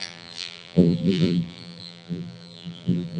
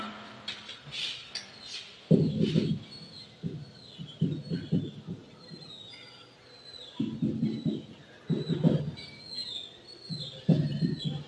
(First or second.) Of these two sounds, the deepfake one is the first